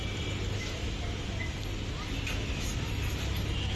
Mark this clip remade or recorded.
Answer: recorded